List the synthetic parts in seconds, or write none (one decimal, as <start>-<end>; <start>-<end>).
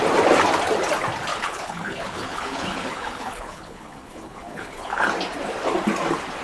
1.3-5.1